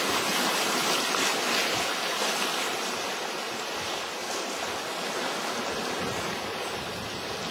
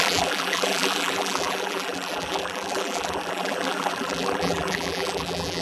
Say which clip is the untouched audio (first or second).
first